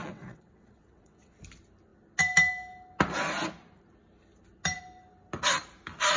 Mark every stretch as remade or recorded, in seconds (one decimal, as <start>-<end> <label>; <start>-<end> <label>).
0.0-1.4 remade; 1.4-6.2 recorded